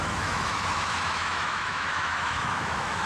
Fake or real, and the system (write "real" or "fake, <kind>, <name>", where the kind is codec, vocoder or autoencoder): fake, autoencoder, DAC-VAE